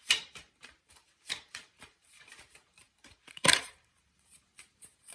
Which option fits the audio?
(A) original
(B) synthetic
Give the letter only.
B